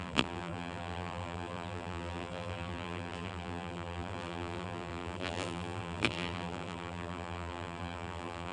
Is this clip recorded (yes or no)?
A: no